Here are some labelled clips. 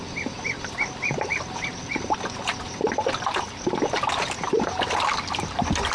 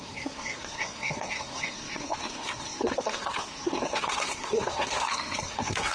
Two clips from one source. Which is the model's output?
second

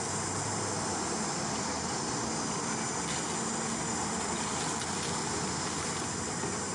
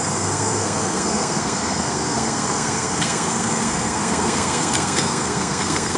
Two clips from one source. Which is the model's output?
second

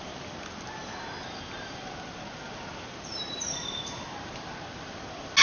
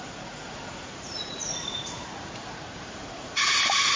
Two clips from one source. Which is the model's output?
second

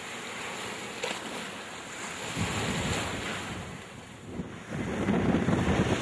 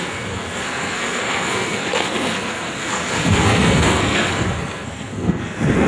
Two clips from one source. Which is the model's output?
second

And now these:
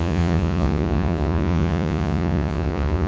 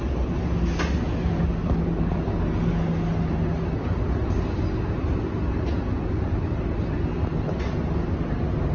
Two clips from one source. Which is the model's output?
first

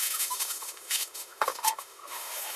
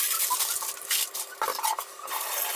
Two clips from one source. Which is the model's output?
first